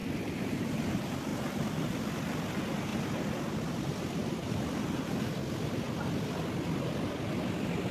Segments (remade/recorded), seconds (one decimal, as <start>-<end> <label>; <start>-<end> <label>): 0.0-0.6 remade; 0.6-1.3 recorded; 1.3-2.5 remade; 2.5-2.9 recorded; 2.9-3.6 remade; 3.6-7.9 recorded